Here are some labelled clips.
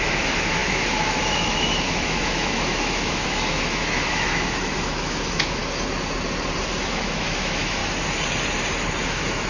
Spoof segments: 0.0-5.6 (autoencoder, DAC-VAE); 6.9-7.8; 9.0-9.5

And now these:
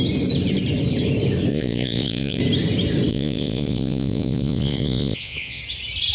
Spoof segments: 1.5-2.4 (vocoder, Vocos); 3.1-5.6

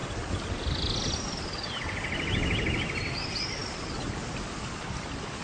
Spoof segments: none

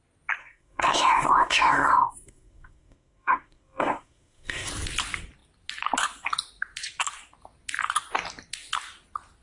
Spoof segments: 0.4-4.7 (codec, SNAC)

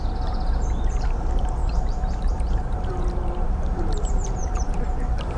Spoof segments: 1.6-4.8 (vocoder, BigVGAN v2)

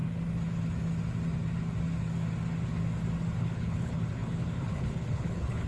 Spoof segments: 3.4-5.7 (codec, HILCodec)